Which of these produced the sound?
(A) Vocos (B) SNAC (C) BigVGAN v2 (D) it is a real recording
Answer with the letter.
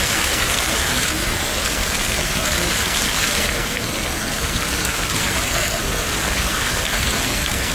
B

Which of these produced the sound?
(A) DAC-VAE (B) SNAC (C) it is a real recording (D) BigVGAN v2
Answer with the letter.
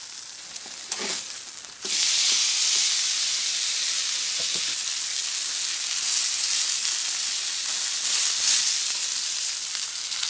C